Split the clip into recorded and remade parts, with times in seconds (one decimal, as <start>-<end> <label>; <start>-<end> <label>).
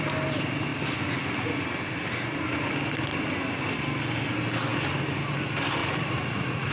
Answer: 0.0-5.8 recorded; 5.8-6.7 remade